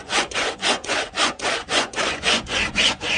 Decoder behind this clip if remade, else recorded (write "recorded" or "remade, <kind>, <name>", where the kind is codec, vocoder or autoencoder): remade, vocoder, Vocos